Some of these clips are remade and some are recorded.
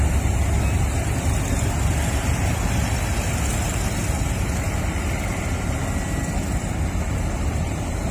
recorded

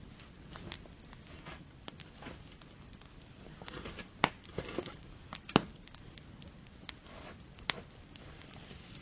recorded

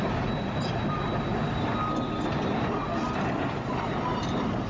recorded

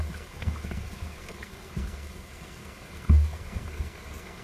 remade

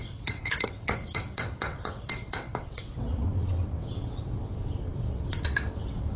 remade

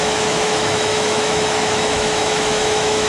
remade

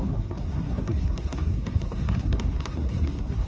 remade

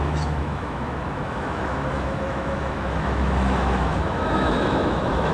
remade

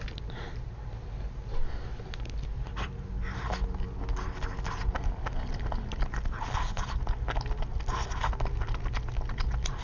recorded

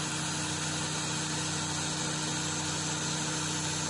recorded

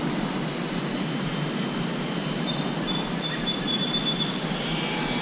recorded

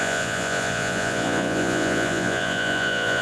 remade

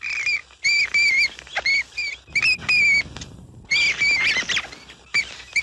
recorded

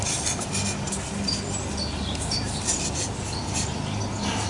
recorded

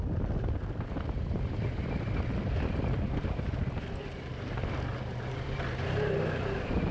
recorded